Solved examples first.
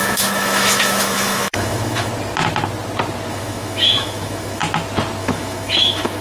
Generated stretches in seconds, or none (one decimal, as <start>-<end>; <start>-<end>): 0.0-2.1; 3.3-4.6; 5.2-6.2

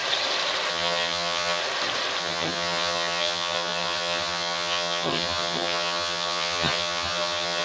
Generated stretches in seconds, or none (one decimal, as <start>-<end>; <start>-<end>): 0.7-1.6; 2.2-7.6

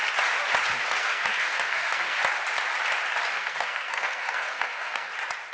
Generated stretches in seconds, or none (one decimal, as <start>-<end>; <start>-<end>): 0.8-2.2; 3.3-5.1